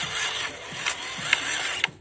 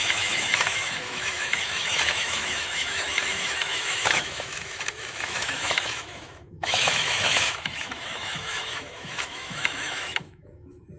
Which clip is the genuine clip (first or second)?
first